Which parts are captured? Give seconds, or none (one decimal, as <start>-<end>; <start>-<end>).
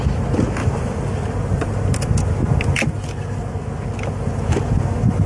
0.0-0.6; 1.1-5.3